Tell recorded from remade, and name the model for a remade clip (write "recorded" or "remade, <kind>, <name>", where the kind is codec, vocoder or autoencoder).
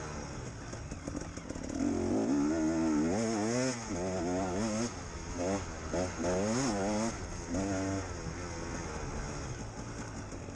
recorded